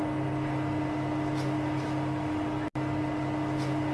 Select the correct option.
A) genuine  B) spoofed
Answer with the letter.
A